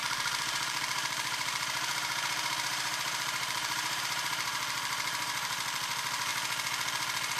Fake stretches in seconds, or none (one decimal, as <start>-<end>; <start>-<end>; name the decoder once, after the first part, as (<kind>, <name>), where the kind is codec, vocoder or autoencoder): 0.0-6.3 (vocoder, BigVGAN v2)